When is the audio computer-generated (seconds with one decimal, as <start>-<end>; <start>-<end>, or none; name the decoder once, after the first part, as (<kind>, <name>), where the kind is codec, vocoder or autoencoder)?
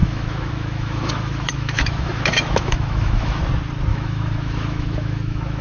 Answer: 0.0-3.4 (autoencoder, DAC-VAE); 3.9-5.6